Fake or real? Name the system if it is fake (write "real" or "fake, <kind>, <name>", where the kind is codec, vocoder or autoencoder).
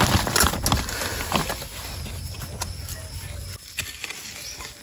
real